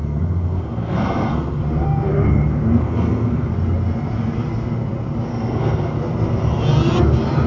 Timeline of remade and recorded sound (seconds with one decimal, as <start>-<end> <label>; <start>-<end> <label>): 0.0-1.6 remade; 1.6-2.8 recorded; 2.8-3.5 remade; 3.5-5.3 recorded; 5.3-5.9 remade; 5.9-7.5 recorded